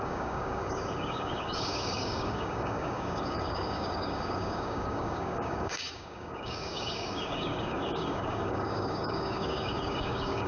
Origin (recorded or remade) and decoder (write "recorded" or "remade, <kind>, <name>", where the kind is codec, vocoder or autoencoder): remade, codec, DAC